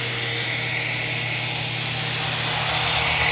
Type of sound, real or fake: real